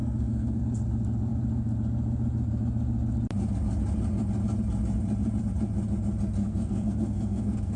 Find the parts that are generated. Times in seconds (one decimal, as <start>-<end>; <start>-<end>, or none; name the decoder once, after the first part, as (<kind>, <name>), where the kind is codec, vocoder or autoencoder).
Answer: 0.0-0.6 (codec, SNAC); 6.4-7.8